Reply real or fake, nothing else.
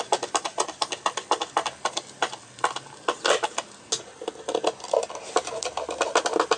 real